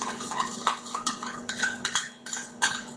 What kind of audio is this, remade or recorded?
remade